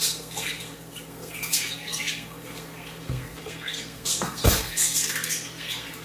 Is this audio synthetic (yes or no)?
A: yes